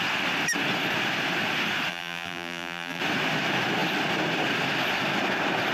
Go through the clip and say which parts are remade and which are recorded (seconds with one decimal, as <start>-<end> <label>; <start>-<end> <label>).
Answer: 0.0-1.9 recorded; 1.9-3.0 remade; 3.0-5.7 recorded